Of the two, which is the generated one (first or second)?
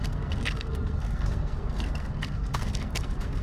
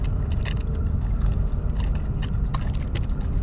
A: first